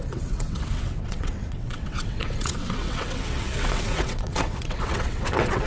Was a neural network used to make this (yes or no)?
yes